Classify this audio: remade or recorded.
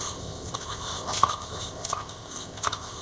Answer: remade